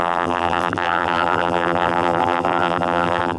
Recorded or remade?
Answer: remade